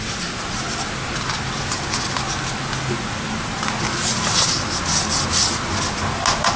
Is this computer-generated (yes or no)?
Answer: no